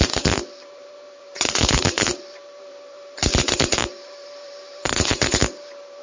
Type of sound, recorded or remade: remade